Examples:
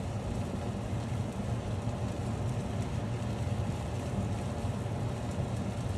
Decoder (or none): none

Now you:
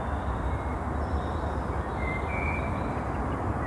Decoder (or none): none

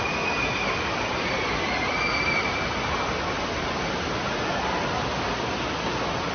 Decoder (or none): none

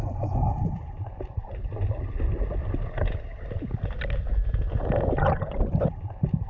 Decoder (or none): none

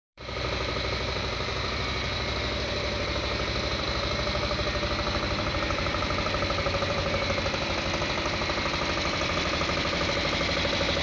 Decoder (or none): vocoder, BigVGAN v2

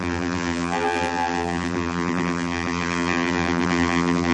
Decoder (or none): vocoder, BigVGAN v2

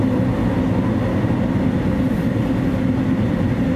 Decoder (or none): none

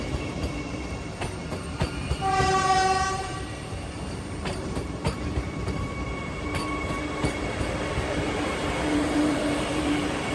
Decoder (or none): vocoder, BigVGAN v2